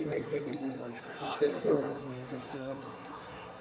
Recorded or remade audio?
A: remade